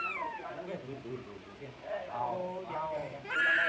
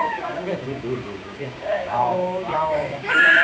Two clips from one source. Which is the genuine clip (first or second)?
first